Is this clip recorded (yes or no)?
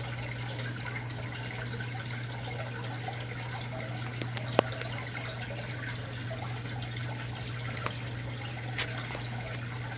yes